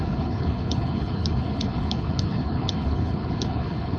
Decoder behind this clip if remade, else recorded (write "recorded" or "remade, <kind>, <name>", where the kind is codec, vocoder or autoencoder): remade, codec, HILCodec